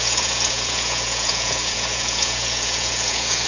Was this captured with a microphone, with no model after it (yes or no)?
no